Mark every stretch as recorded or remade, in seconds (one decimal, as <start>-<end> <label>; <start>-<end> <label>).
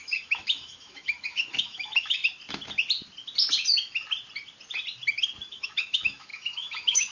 0.0-2.2 remade; 2.2-5.5 recorded; 5.5-7.1 remade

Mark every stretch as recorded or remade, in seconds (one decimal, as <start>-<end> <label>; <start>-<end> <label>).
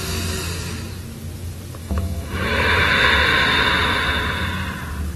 0.0-1.8 recorded; 1.8-2.9 remade; 2.9-5.2 recorded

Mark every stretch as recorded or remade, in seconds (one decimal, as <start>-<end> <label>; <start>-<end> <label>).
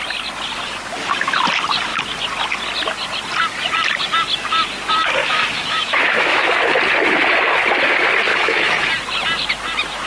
0.0-5.2 recorded; 5.2-6.5 remade; 6.5-8.3 recorded; 8.3-8.9 remade; 8.9-10.1 recorded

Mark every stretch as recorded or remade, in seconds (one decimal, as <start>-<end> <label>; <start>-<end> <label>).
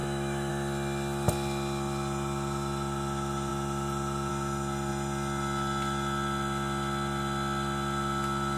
0.0-0.5 remade; 0.5-8.6 recorded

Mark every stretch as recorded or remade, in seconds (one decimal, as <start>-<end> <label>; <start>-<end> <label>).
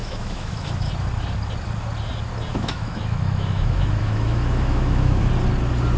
0.0-0.9 remade; 0.9-2.5 recorded; 2.5-5.3 remade; 5.3-6.0 recorded